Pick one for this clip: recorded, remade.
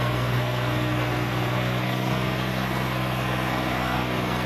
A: remade